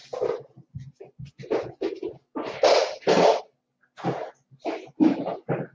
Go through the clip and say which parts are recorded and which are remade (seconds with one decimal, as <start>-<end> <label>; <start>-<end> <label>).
0.0-5.7 recorded